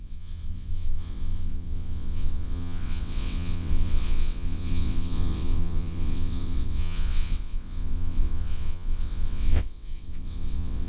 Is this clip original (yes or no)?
no